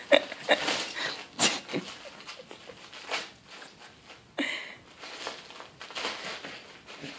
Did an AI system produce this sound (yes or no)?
no